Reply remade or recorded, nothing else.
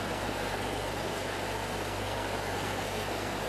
remade